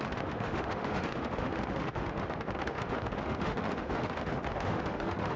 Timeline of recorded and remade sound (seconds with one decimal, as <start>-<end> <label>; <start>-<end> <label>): 0.0-5.4 remade